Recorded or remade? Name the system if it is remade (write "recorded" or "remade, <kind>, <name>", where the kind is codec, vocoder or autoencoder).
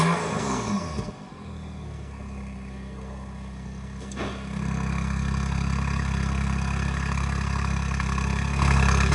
remade, codec, SNAC